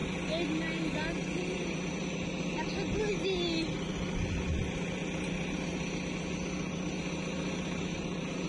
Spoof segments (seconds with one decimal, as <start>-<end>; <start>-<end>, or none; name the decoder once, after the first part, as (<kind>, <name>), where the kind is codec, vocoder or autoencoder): none